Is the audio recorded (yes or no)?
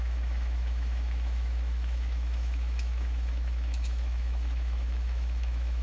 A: no